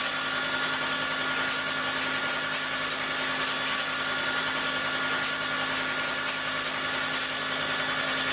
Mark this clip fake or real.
real